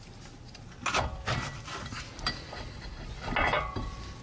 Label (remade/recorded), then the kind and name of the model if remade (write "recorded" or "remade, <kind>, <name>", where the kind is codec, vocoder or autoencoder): recorded